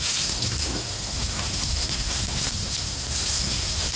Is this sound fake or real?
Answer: fake